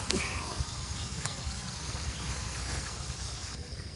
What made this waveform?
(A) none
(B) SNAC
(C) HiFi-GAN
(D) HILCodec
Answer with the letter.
B